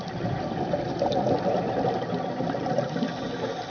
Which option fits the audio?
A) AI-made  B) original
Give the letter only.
B